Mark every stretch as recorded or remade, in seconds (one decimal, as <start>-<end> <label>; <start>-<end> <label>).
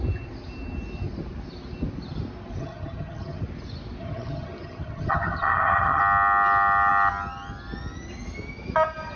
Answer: 0.0-2.6 recorded; 2.6-3.4 remade; 3.4-4.0 recorded; 4.0-6.0 remade; 6.0-9.2 recorded